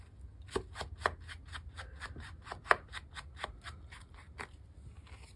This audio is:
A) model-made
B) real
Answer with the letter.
B